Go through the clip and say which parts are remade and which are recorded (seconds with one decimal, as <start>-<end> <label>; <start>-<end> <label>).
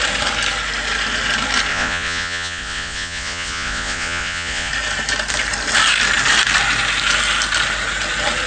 0.0-1.7 recorded; 1.7-4.7 remade; 4.7-8.5 recorded